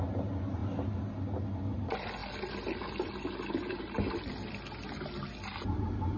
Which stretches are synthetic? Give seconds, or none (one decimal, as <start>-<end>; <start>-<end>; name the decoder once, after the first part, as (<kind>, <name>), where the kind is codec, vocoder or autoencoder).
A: none